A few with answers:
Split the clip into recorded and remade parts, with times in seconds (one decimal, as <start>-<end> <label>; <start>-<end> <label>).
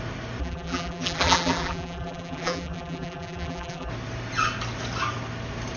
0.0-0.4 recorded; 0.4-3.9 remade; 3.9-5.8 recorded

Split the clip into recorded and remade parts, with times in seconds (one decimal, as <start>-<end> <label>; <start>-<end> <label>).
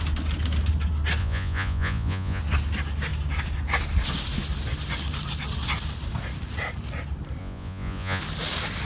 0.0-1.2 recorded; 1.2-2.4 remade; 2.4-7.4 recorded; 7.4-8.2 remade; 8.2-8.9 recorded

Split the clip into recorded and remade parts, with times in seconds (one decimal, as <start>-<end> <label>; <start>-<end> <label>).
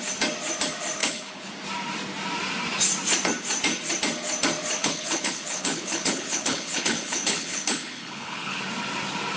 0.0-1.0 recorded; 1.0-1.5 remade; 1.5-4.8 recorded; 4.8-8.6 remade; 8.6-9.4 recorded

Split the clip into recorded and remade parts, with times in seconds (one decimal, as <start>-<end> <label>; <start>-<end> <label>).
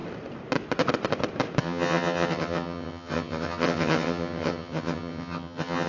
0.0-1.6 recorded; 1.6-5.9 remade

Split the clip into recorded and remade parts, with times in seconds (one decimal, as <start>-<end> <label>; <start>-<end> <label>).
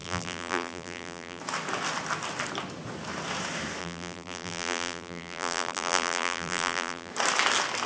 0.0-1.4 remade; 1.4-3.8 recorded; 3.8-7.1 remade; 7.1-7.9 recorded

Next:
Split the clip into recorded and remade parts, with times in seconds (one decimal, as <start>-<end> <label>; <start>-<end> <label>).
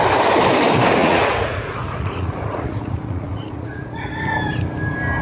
0.0-1.0 recorded; 1.0-4.1 remade; 4.1-5.2 recorded